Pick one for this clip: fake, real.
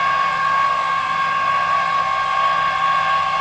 real